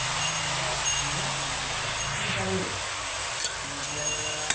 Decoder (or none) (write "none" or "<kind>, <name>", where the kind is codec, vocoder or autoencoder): none